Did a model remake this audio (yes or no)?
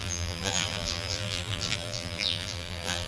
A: yes